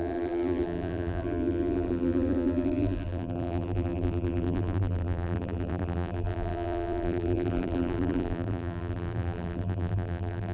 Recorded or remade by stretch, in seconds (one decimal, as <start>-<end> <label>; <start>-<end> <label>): 0.0-10.5 remade